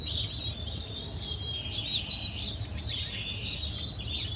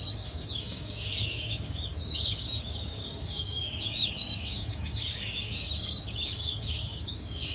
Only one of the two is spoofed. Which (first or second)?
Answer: second